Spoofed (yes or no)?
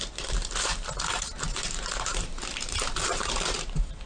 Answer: yes